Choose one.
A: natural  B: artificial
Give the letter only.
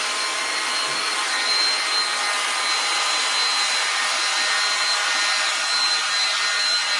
A